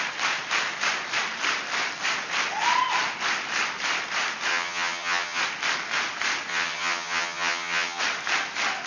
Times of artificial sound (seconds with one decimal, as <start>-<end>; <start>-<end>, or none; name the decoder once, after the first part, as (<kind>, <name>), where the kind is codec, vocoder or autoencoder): 4.5-5.4 (vocoder, HiFi-GAN); 6.5-8.0